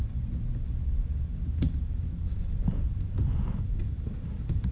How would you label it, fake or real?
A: real